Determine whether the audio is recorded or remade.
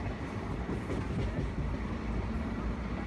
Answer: recorded